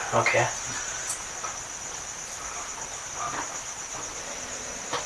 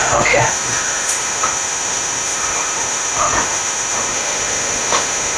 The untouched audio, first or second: first